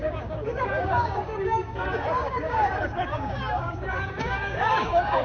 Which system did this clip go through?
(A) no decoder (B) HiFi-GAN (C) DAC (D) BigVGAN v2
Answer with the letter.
C